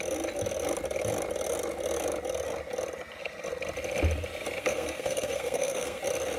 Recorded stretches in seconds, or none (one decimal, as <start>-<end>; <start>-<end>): 0.0-4.6; 6.0-6.4